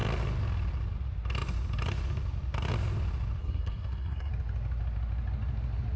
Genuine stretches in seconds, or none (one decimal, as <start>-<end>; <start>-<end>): 0.0-3.4; 4.3-6.0